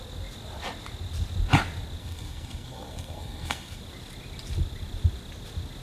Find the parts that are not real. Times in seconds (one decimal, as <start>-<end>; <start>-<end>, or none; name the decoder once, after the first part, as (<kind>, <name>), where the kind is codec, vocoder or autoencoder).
2.0-3.8 (codec, SNAC)